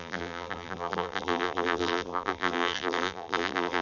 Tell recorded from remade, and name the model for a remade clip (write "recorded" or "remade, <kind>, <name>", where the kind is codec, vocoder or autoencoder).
remade, vocoder, BigVGAN v2